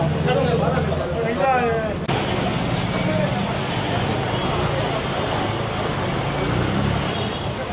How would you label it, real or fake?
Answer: real